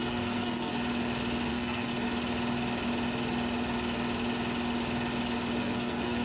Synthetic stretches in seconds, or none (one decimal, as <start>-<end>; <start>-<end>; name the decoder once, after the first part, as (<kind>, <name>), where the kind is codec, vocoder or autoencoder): 0.0-0.7 (codec, SNAC); 1.5-1.9; 5.6-6.2